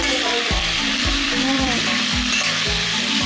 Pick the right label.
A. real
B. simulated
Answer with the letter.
B